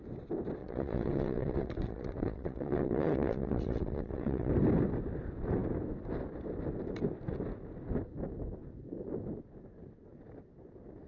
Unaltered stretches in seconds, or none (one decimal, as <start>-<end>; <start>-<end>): 0.0-0.6; 4.5-11.1